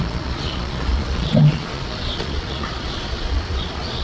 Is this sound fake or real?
fake